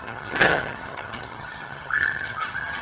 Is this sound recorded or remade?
remade